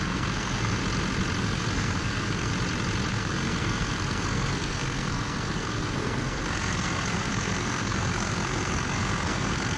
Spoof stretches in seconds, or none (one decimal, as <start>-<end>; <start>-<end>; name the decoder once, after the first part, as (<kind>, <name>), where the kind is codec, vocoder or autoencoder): 0.0-0.8 (codec, SNAC); 1.4-2.5; 3.1-9.8